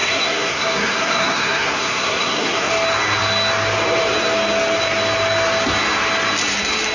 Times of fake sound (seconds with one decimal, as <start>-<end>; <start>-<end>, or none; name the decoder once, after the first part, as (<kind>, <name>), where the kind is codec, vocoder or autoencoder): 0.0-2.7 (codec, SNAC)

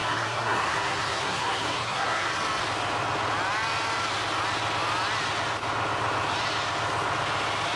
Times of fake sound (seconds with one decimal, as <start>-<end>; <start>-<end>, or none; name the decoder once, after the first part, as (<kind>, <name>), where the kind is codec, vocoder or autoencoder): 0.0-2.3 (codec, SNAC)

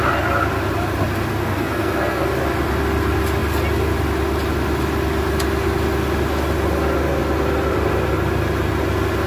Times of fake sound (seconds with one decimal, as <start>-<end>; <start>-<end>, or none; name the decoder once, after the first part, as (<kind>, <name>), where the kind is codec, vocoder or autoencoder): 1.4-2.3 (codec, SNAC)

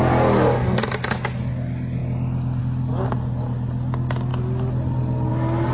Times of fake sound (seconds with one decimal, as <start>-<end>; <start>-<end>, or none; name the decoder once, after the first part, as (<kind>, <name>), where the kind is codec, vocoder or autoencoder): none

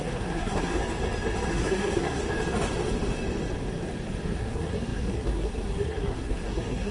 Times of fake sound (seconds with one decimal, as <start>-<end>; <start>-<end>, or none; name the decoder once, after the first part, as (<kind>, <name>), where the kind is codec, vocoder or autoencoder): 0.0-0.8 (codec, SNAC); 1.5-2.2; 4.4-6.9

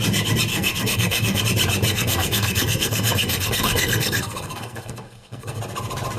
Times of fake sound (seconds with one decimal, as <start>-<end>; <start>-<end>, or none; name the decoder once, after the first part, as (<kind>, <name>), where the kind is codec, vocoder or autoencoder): 0.5-1.4 (codec, SNAC); 1.9-5.6